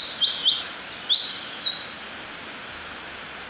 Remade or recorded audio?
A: recorded